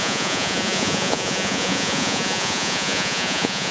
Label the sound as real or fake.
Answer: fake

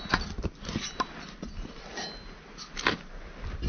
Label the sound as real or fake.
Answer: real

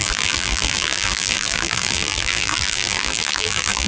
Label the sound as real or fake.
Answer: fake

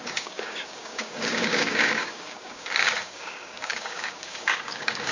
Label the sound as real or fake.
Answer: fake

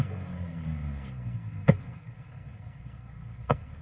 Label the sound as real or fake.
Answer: fake